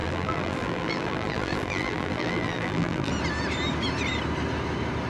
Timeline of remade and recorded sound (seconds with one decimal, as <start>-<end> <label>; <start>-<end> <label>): 0.0-3.1 remade; 3.1-5.1 recorded